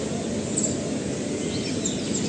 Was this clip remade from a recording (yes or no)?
no